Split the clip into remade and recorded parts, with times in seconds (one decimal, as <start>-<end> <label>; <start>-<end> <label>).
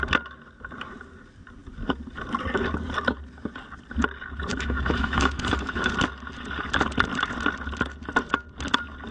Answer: 0.0-4.5 recorded; 4.5-5.9 remade; 5.9-9.1 recorded